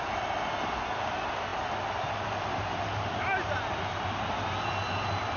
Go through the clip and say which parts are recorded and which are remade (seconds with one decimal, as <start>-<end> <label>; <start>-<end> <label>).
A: 0.0-5.4 recorded